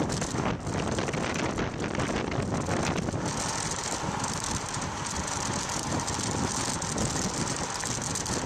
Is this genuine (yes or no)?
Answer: yes